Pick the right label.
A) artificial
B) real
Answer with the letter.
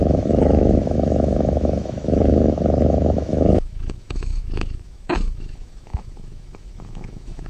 A